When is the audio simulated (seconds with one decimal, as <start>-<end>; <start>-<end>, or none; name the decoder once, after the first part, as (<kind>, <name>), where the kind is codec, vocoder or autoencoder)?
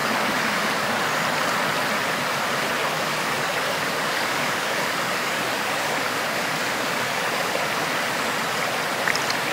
0.0-1.0 (codec, DAC); 2.8-7.6